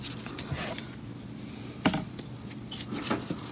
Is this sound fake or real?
fake